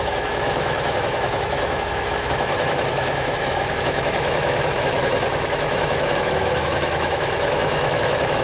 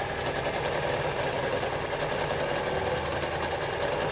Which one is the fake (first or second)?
first